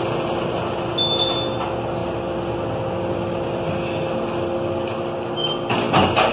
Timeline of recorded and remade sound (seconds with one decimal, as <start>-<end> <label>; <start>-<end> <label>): 0.0-6.3 recorded